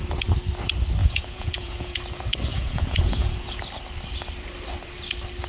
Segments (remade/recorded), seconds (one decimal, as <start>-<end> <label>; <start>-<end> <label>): 0.0-1.0 recorded; 1.0-2.0 remade; 2.0-2.5 recorded; 2.5-3.6 remade; 3.6-5.5 recorded